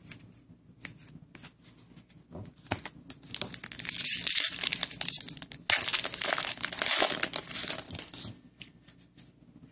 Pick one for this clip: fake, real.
real